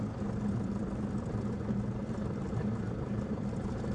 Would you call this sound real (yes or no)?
yes